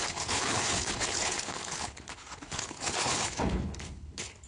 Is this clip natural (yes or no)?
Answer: no